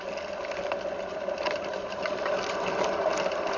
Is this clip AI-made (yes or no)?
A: no